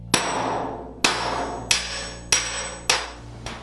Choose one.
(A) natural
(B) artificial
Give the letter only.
A